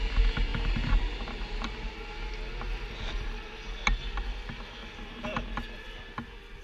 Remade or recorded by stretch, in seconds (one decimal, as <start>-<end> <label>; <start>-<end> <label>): 0.0-0.5 recorded; 0.5-1.7 remade; 1.7-4.8 recorded; 4.8-5.7 remade; 5.7-6.6 recorded